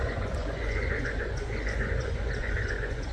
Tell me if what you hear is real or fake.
fake